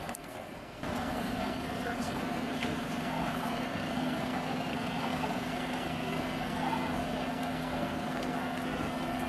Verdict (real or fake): fake